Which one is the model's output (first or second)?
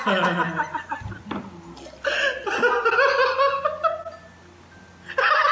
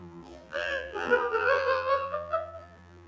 second